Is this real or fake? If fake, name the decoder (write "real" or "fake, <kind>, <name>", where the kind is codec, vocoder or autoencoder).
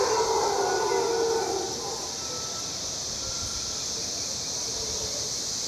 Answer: real